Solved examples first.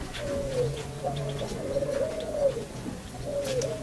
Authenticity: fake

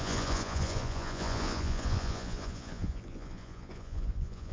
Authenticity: fake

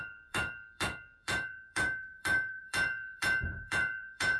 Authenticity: fake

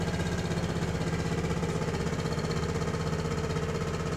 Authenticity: real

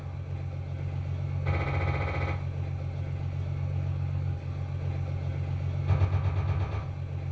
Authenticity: real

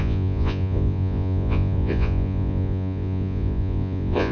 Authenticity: fake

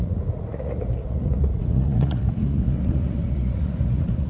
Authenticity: fake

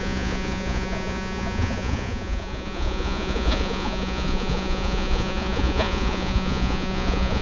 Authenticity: fake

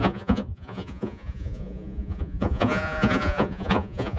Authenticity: fake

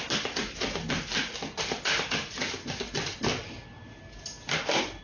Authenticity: real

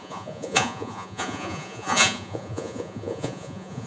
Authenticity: fake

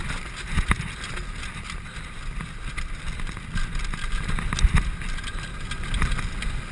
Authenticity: real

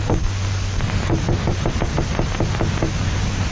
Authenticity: real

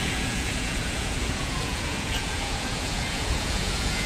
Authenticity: fake